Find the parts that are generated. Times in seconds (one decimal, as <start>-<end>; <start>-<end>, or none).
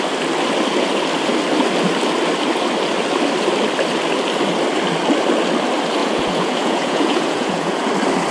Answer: 6.0-7.9